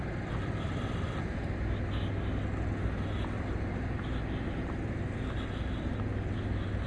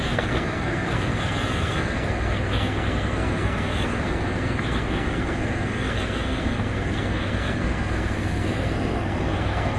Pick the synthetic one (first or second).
second